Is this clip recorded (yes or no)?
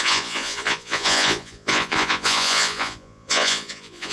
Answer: no